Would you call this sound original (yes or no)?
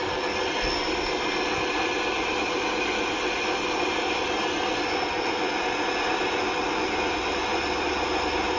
yes